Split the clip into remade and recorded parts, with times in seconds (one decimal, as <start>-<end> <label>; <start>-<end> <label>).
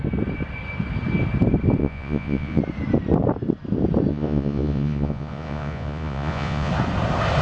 0.0-1.8 recorded; 1.8-2.6 remade; 2.6-4.1 recorded; 4.1-6.7 remade; 6.7-7.4 recorded